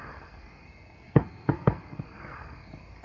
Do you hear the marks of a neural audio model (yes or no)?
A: yes